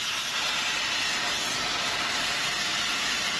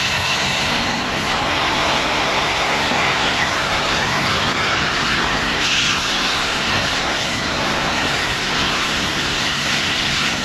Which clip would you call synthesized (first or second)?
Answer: second